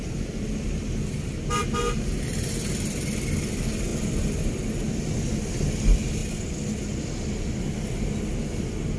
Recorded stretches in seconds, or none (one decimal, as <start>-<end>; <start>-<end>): 0.0-9.0